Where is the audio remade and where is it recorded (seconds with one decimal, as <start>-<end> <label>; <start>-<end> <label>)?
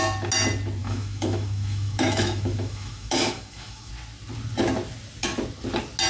0.0-0.8 recorded; 0.8-3.9 remade; 3.9-6.1 recorded